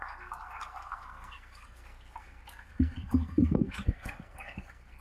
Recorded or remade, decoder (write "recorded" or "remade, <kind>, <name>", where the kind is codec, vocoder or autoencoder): remade, codec, SNAC